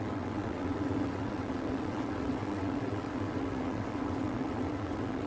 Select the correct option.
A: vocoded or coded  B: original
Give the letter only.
A